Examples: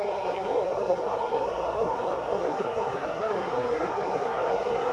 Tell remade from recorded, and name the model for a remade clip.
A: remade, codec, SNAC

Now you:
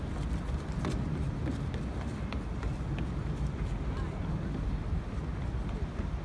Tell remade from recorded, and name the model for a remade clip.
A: recorded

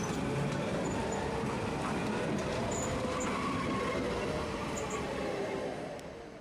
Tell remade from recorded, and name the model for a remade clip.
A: recorded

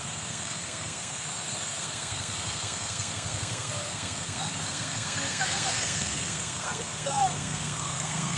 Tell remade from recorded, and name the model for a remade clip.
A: remade, codec, SNAC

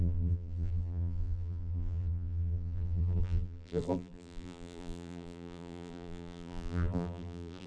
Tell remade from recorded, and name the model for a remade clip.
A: remade, vocoder, BigVGAN v2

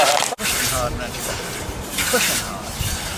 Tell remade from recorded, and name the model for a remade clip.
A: recorded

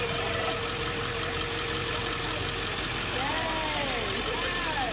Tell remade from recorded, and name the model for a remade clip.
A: recorded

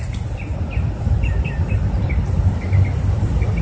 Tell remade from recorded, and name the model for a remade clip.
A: recorded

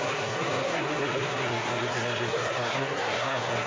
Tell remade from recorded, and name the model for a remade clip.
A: remade, codec, SNAC